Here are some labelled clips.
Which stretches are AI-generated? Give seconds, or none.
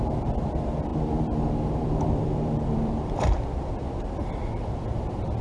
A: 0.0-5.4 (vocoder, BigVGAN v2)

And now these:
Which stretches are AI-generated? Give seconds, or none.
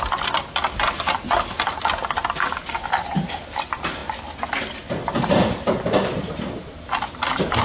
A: none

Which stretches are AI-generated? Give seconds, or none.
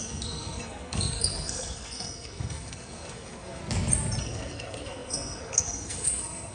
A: 0.0-3.6 (codec, SNAC); 4.2-6.5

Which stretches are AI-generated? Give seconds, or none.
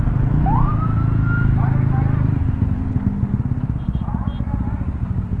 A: none